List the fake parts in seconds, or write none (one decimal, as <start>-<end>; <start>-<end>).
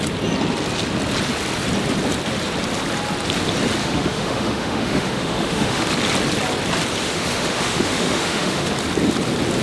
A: 3.8-5.9; 7.0-8.7